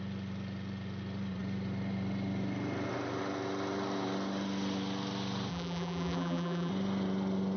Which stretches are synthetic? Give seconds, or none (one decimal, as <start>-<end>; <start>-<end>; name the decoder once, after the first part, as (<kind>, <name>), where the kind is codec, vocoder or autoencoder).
5.5-6.7 (vocoder, BigVGAN v2)